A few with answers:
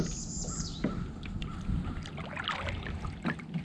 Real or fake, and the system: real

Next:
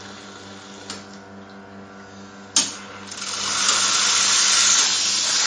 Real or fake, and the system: real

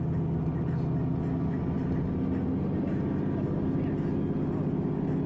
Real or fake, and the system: real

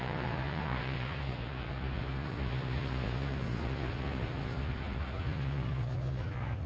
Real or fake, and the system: fake, vocoder, Vocos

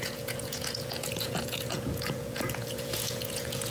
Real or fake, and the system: fake, vocoder, Vocos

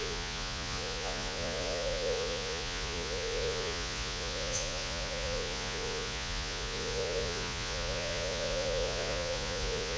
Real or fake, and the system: fake, vocoder, Vocos